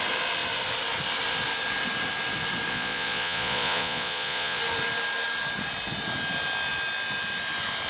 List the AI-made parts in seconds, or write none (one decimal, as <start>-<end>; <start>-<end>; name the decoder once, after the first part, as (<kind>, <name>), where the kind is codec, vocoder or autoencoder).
2.7-4.6 (vocoder, Vocos)